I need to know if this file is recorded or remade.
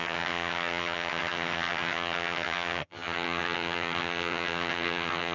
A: remade